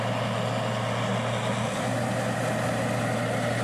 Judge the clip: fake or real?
real